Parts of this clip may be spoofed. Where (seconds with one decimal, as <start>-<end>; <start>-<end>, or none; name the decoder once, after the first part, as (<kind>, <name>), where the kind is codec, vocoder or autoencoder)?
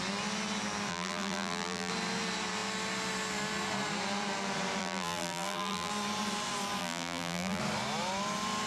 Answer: 0.9-1.9 (vocoder, BigVGAN v2); 4.8-5.9; 6.8-7.6